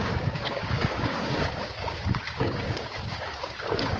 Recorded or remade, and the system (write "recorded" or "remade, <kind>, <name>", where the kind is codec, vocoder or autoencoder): remade, codec, DAC